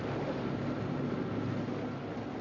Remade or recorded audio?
recorded